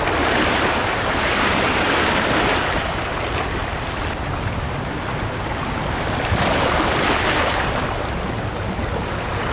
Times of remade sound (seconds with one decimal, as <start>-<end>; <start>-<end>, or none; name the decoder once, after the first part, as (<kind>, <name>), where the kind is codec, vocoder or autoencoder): none